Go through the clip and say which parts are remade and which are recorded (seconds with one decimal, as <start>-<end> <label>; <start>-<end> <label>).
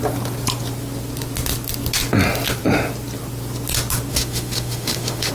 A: 0.0-4.1 recorded; 4.1-5.3 remade